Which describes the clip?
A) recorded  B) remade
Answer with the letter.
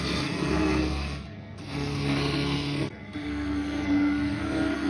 B